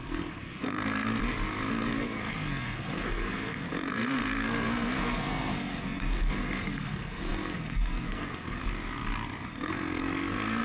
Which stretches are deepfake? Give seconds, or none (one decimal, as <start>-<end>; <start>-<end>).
0.0-1.2; 1.7-8.6; 9.5-10.6